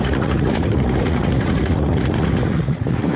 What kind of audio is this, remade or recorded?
remade